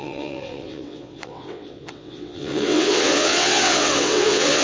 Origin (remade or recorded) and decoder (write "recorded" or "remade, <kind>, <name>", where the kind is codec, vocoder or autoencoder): remade, vocoder, WaveNeXt